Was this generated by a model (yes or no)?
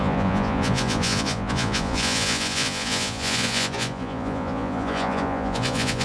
yes